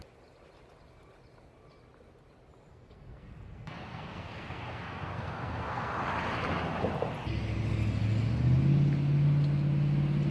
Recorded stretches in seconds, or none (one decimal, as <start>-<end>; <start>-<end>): 0.0-2.7; 5.9-10.3